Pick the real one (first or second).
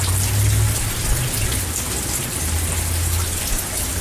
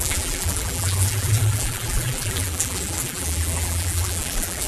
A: first